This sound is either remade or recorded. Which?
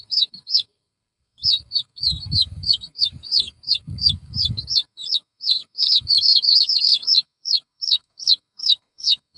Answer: remade